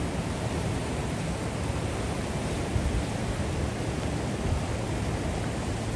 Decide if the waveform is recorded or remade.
recorded